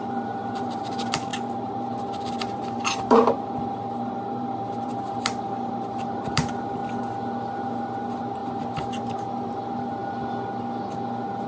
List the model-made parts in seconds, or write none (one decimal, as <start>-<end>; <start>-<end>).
0.0-6.8; 7.6-10.0